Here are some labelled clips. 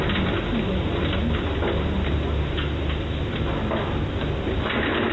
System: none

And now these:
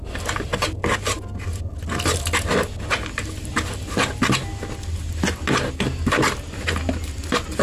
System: none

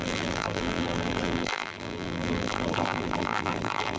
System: vocoder, BigVGAN v2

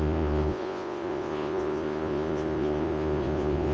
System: vocoder, Vocos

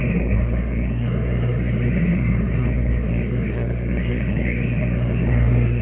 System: codec, SNAC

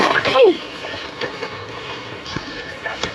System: codec, SNAC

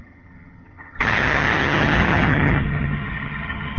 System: vocoder, HiFi-GAN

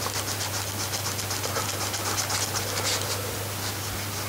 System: none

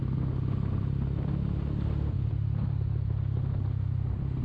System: none